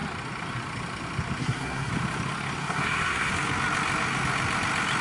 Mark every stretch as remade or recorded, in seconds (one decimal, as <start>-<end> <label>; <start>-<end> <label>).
0.0-1.4 recorded; 1.4-1.9 remade; 1.9-2.6 recorded; 2.6-3.3 remade; 3.3-5.0 recorded